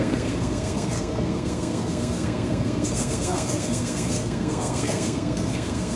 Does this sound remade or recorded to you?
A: remade